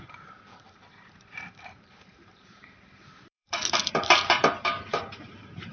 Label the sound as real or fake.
fake